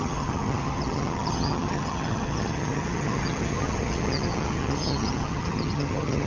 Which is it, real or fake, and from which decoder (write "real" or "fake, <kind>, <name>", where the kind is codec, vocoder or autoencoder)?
fake, vocoder, HiFi-GAN